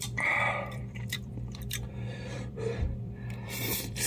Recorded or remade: remade